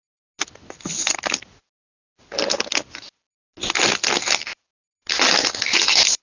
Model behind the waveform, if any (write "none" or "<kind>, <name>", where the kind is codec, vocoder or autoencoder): none